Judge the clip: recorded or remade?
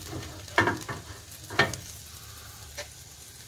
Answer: recorded